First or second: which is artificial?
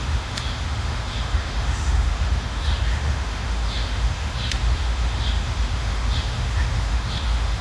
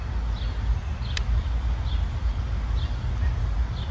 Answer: first